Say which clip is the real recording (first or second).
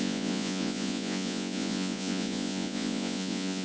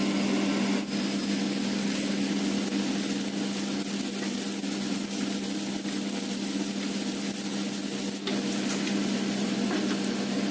second